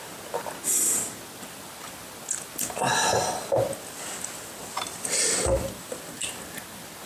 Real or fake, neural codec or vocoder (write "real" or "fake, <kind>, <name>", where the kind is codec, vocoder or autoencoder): real